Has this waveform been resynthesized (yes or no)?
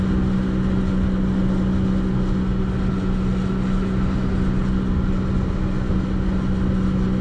no